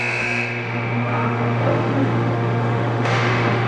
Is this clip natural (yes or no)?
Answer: no